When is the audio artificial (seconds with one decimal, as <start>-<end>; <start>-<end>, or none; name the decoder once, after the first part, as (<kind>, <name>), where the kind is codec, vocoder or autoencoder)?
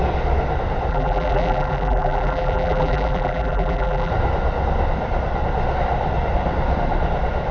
0.9-4.1 (vocoder, BigVGAN v2)